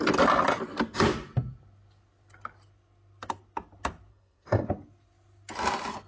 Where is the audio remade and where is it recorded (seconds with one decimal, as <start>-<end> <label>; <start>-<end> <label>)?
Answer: 0.0-4.1 recorded; 4.1-4.7 remade; 4.7-6.1 recorded